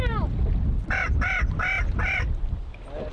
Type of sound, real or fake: real